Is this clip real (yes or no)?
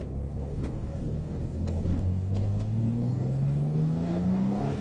no